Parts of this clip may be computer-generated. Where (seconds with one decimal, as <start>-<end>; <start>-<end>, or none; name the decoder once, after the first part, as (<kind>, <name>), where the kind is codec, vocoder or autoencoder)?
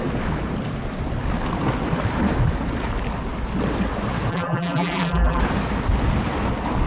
4.3-5.4 (vocoder, BigVGAN v2)